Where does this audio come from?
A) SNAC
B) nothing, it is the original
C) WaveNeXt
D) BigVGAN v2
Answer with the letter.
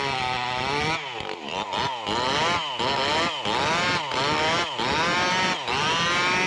B